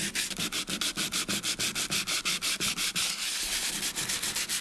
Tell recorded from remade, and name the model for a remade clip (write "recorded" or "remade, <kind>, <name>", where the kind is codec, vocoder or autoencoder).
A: recorded